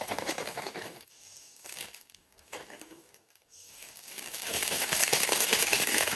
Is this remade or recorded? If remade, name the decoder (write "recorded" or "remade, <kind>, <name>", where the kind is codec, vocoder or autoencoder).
remade, codec, DAC